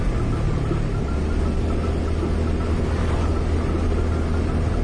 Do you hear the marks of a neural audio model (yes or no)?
no